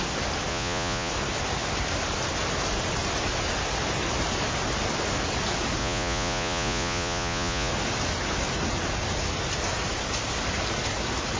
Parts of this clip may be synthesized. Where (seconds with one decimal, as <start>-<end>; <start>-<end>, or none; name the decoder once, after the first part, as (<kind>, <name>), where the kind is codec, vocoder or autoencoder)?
0.5-1.1 (vocoder, Vocos); 5.8-7.7